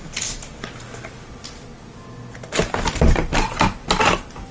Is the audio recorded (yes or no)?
yes